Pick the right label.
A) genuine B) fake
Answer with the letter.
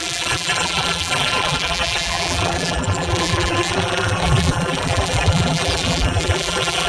B